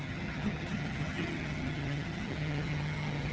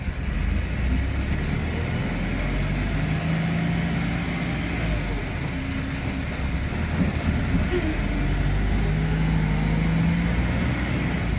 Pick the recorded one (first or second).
second